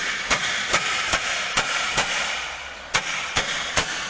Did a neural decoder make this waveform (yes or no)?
yes